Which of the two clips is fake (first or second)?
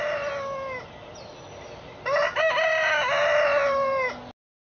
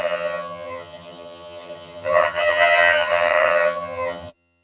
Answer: second